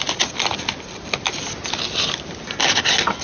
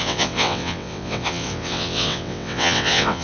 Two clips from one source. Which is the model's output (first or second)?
second